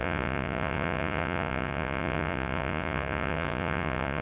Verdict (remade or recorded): remade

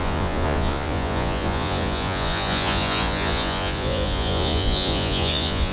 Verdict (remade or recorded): remade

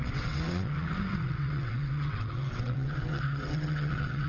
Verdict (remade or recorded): remade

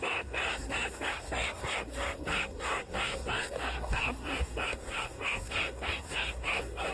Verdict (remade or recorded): remade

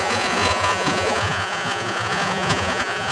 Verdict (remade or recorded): remade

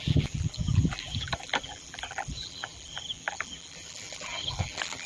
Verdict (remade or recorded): remade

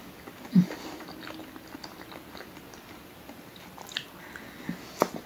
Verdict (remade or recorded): recorded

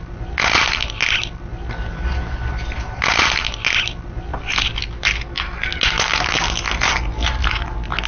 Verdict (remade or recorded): recorded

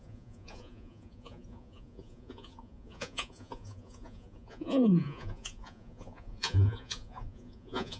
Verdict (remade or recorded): remade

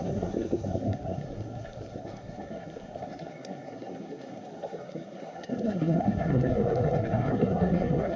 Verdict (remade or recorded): remade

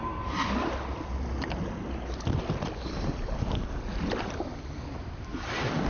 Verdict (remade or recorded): recorded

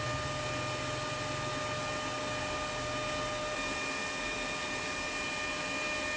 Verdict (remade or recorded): recorded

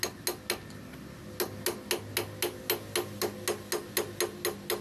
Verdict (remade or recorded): recorded